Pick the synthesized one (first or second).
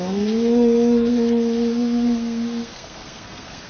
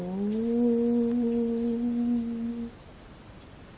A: first